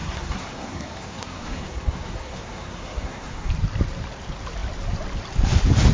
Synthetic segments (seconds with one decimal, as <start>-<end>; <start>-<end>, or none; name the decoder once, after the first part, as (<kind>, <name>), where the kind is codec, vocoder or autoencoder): 0.0-3.5 (codec, SNAC)